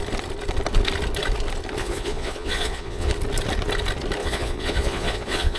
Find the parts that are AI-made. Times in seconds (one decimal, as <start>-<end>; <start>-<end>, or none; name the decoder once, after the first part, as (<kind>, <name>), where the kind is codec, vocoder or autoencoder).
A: 1.8-3.1 (vocoder, Vocos); 4.2-5.6